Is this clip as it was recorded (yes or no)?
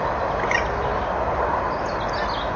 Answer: yes